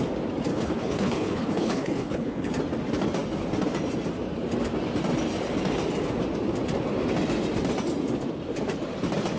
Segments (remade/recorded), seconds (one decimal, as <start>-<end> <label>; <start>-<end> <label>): 0.0-0.5 recorded; 0.5-2.5 remade; 2.5-9.4 recorded